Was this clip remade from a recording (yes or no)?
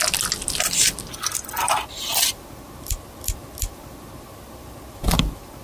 no